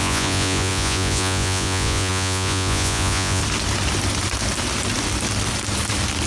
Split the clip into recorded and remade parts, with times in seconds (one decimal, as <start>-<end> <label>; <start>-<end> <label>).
0.0-3.4 remade; 3.4-6.3 recorded